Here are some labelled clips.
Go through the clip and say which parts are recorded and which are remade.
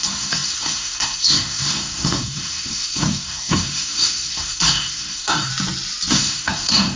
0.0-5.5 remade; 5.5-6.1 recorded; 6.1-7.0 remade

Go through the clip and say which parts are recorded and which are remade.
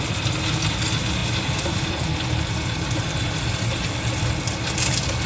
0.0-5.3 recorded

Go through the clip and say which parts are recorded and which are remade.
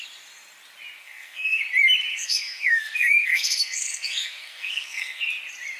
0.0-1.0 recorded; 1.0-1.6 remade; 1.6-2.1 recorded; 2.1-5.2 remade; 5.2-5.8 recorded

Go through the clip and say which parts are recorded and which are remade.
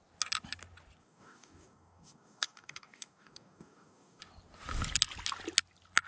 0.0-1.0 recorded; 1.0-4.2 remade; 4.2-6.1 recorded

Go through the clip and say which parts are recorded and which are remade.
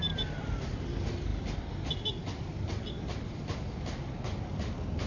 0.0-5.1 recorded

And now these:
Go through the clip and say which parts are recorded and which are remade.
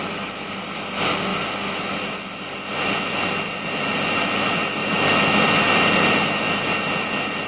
0.0-7.5 recorded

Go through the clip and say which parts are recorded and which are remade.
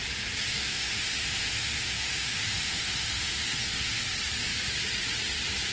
0.0-0.6 recorded; 0.6-4.0 remade; 4.0-5.7 recorded